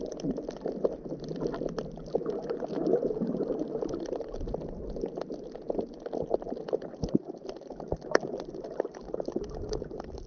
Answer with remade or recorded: recorded